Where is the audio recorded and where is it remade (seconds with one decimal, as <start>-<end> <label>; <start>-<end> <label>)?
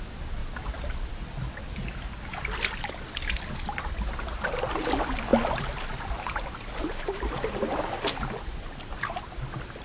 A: 0.0-0.4 recorded; 0.4-1.1 remade; 1.1-5.3 recorded; 5.3-6.8 remade; 6.8-9.8 recorded